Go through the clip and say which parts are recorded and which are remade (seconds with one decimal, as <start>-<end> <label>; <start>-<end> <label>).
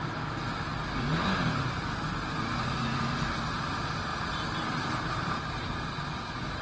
0.0-6.6 recorded